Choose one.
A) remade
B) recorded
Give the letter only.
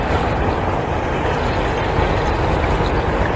A